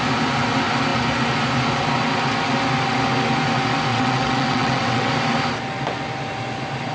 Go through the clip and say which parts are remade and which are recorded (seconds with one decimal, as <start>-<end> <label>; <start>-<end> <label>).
0.0-3.9 recorded; 3.9-5.1 remade; 5.1-6.9 recorded